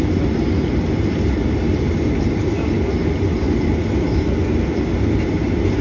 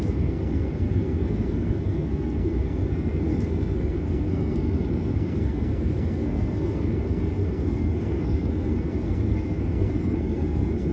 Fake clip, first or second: second